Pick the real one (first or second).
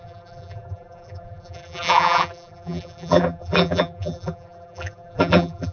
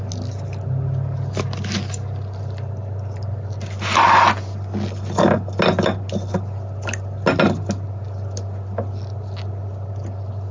second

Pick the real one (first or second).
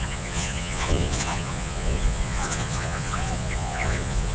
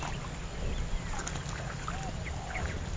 second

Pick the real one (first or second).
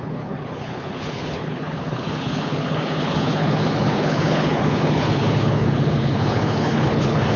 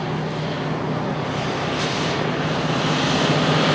second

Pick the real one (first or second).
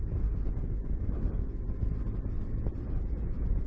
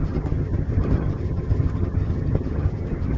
first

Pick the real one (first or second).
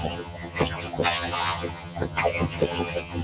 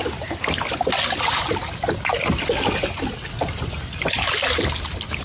second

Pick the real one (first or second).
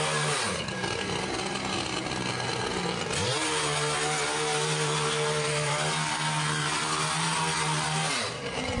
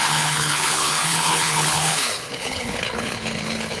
first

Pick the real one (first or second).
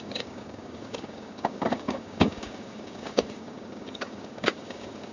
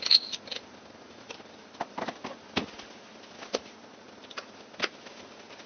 second